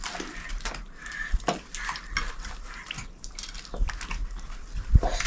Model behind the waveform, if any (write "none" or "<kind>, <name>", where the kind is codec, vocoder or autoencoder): none